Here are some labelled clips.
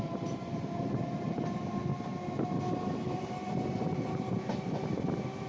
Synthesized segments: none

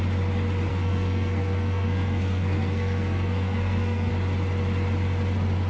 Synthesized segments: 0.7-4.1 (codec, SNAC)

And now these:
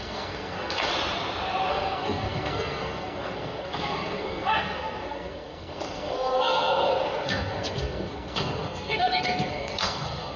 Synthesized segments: 0.0-0.9 (codec, SNAC); 1.7-10.4

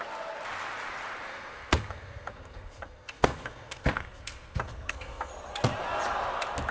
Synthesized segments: 1.3-5.3 (codec, SNAC)

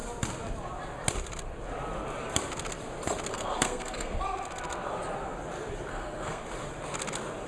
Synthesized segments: 3.3-4.2 (codec, SNAC); 5.9-6.4

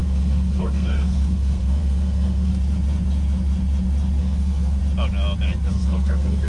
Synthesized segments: 0.0-2.5 (codec, SNAC); 4.2-4.8; 5.7-6.5

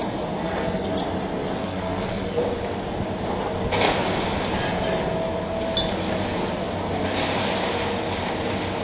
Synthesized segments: 0.4-0.9 (codec, SNAC); 1.6-2.4